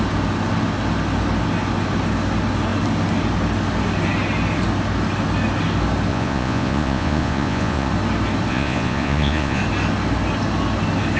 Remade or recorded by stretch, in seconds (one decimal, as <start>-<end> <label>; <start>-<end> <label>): 0.0-6.1 recorded; 6.1-7.9 remade; 7.9-8.5 recorded; 8.5-9.6 remade; 9.6-11.2 recorded